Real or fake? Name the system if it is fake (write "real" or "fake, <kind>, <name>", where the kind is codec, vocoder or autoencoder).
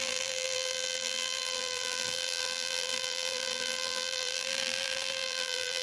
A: fake, vocoder, BigVGAN v2